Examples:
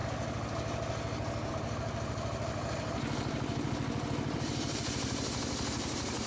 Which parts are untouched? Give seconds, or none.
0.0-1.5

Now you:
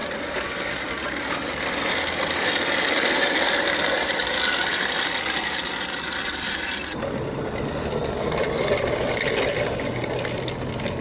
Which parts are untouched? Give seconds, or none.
0.0-11.0

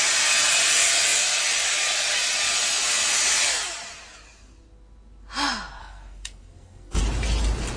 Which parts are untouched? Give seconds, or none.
0.0-5.8; 7.0-7.8

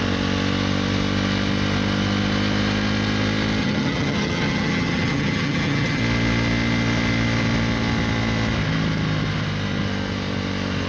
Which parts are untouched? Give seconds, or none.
0.0-3.6; 6.0-10.9

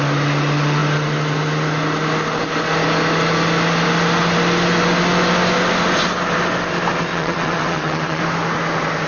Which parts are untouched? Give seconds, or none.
0.0-7.1; 8.2-9.1

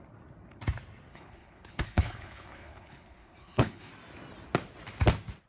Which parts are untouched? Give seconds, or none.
0.0-1.1; 3.9-5.5

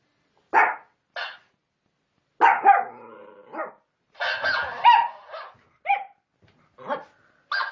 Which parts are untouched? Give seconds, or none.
0.0-7.7